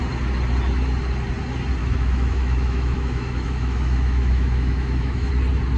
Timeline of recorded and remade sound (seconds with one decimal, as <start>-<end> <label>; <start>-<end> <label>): 0.0-1.8 recorded; 1.8-5.3 remade; 5.3-5.8 recorded